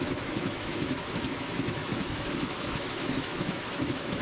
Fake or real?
fake